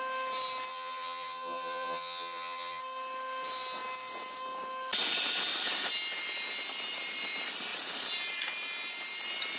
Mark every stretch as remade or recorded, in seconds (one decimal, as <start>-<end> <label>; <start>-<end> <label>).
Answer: 0.0-0.7 recorded; 0.7-2.8 remade; 2.8-9.6 recorded